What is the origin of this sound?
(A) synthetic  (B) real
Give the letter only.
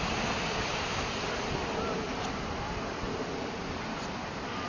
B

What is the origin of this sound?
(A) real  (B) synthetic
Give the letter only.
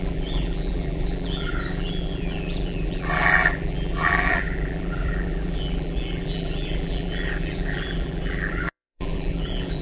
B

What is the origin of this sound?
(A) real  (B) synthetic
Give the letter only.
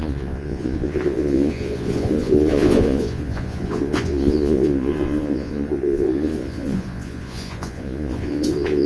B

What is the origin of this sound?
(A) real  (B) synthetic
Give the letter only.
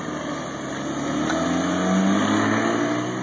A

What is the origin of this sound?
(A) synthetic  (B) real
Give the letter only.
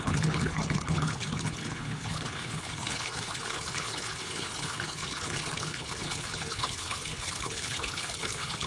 A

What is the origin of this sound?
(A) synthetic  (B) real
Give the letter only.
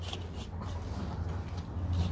B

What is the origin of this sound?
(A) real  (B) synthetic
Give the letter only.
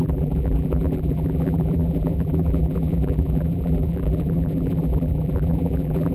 B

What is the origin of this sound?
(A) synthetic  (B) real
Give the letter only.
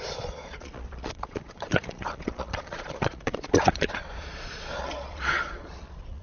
A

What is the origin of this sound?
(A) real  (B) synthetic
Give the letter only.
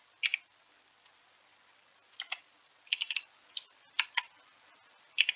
A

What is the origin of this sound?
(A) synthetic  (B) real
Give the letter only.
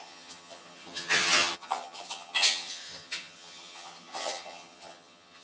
A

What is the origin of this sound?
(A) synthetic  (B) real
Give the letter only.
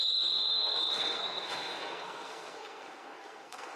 A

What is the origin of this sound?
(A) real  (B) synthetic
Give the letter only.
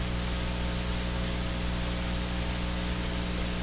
A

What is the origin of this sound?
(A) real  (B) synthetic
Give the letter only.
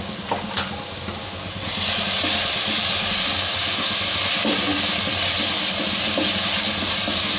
A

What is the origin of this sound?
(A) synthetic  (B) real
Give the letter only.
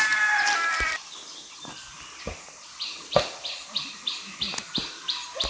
B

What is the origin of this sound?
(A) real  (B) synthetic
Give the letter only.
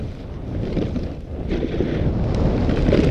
A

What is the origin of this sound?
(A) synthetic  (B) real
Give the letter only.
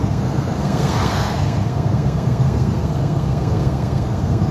A